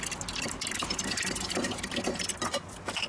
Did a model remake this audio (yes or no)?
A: no